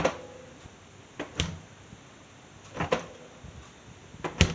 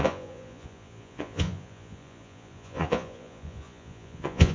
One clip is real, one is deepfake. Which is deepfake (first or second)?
second